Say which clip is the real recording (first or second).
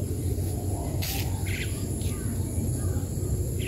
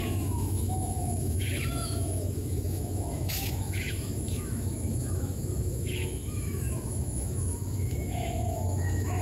first